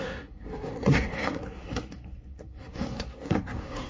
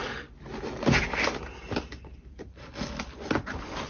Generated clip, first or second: first